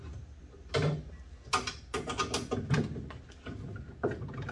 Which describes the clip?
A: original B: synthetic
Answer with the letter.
A